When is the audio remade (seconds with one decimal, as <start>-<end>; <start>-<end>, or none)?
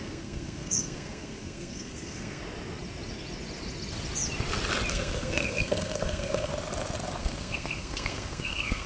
0.0-2.4; 4.9-6.5; 7.2-8.9